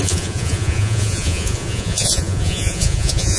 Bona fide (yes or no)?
no